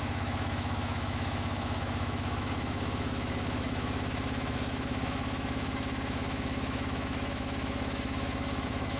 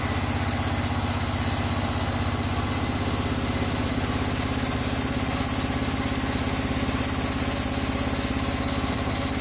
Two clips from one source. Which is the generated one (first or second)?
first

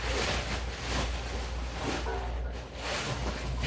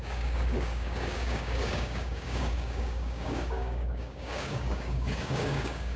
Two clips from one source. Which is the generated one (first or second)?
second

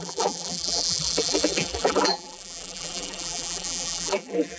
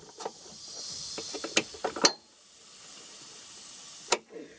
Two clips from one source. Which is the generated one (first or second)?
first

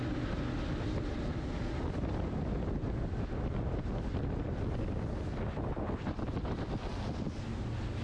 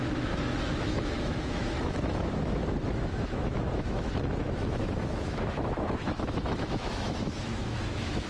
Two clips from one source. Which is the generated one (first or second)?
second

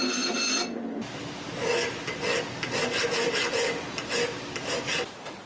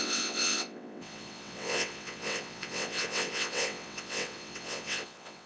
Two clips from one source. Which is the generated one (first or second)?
second